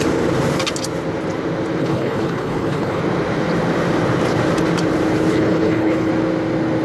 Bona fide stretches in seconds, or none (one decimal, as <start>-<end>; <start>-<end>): 0.0-1.8; 3.0-5.3; 6.1-6.8